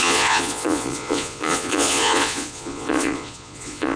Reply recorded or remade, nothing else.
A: remade